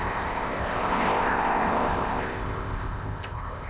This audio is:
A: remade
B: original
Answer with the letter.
A